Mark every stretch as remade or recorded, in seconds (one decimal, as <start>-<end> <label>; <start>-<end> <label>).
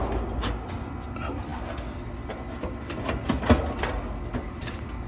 0.0-5.1 recorded